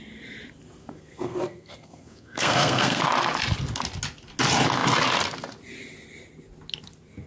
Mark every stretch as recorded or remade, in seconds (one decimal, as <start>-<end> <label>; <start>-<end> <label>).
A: 0.0-0.8 recorded; 0.8-3.0 remade; 3.0-7.3 recorded